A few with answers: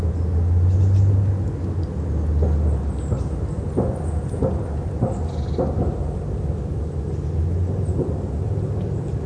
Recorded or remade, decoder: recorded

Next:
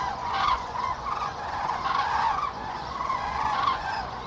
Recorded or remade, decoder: remade, vocoder, Vocos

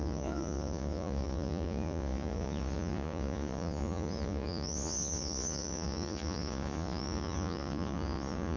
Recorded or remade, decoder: remade, vocoder, Vocos